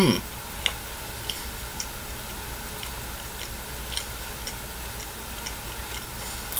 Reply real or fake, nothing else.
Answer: real